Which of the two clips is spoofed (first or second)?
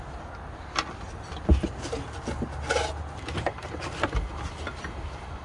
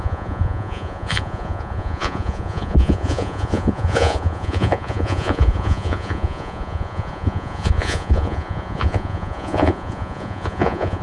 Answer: second